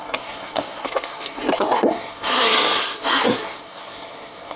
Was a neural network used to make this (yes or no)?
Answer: yes